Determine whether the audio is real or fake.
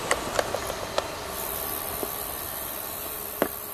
real